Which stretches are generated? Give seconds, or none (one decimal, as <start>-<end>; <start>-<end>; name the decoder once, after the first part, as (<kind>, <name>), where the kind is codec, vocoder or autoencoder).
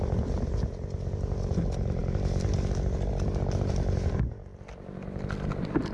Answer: none